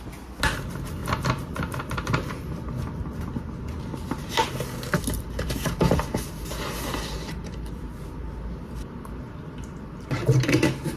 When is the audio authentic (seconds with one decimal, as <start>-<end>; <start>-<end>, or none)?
0.0-11.0